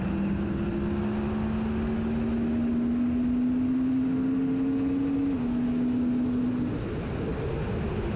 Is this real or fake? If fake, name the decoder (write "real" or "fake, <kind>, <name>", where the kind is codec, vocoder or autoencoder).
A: real